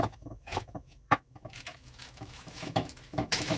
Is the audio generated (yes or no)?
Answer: yes